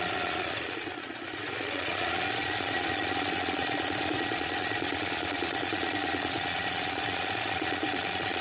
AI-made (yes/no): yes